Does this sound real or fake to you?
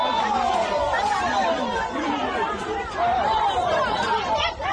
fake